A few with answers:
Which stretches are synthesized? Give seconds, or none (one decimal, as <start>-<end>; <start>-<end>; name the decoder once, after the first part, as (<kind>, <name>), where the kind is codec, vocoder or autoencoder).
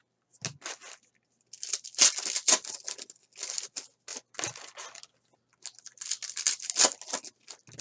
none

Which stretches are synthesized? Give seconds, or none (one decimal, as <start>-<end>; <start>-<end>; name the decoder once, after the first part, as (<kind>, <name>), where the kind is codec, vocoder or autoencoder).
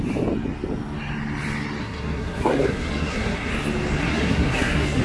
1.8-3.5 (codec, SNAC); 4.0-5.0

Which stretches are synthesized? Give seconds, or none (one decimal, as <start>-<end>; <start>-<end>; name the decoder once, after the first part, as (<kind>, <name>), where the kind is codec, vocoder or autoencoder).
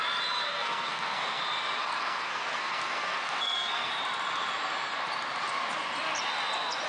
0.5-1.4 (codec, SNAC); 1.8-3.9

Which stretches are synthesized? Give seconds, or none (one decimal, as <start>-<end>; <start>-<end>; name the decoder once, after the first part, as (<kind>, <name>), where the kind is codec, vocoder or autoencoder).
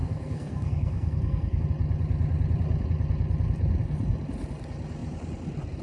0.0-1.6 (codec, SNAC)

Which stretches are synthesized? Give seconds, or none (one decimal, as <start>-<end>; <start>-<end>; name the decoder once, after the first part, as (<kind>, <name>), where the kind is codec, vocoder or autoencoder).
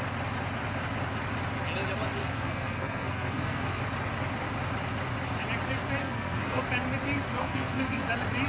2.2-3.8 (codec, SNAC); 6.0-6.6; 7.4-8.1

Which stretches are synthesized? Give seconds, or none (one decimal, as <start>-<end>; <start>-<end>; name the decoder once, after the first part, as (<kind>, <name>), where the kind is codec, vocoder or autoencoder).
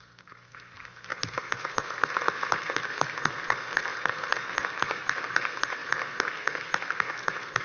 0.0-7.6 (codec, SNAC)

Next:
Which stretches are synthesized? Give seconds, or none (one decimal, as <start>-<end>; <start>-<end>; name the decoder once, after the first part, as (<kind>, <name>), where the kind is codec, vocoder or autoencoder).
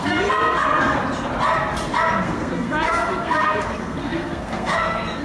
0.0-1.0 (codec, SNAC); 2.2-5.2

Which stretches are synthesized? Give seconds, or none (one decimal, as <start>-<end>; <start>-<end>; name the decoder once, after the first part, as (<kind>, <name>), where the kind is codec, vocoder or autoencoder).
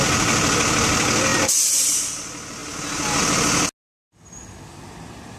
none